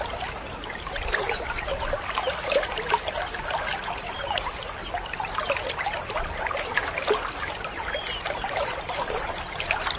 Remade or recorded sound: recorded